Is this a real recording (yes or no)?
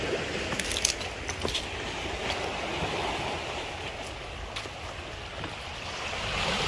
yes